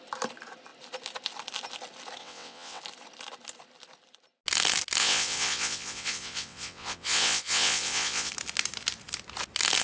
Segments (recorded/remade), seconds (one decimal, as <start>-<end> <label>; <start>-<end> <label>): 0.0-2.2 recorded; 2.2-2.8 remade; 2.8-5.0 recorded; 5.0-8.3 remade; 8.3-9.8 recorded